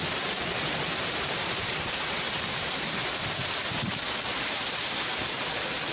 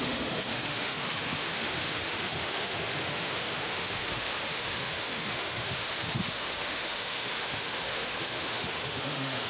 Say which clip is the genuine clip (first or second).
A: first